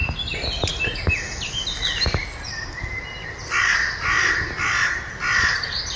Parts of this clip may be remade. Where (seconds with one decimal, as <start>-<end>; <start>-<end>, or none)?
none